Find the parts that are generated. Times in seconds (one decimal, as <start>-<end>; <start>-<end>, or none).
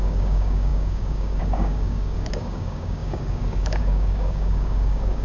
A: 0.0-5.2